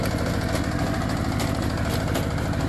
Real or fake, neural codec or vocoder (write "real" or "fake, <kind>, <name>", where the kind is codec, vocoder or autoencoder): real